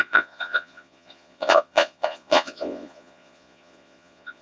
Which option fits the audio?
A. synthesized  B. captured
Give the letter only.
A